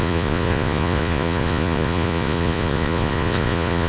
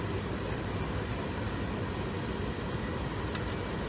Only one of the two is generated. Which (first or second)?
first